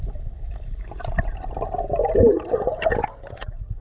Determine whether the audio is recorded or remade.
recorded